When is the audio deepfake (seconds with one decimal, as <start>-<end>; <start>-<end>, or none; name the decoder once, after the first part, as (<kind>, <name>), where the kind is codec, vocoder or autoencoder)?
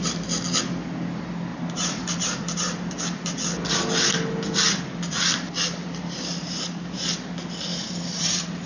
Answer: 1.5-3.0 (vocoder, BigVGAN v2); 5.8-7.0; 7.7-8.7